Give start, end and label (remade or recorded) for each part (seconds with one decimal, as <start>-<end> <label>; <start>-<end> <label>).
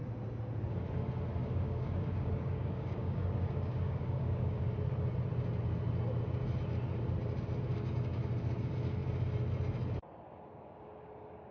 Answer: 0.0-1.4 recorded; 1.4-4.7 remade; 4.7-7.7 recorded; 7.7-8.3 remade; 8.3-11.5 recorded